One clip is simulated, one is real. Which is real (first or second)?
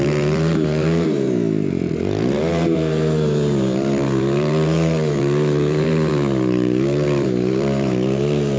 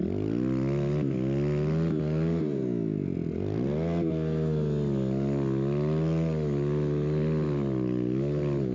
second